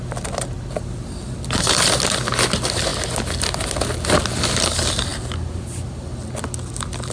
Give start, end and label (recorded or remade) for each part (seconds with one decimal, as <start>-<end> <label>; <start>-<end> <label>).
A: 0.0-7.1 recorded